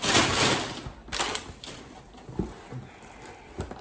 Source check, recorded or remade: recorded